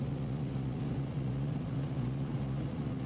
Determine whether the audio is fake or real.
fake